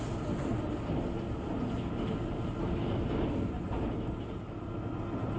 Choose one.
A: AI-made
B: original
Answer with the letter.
B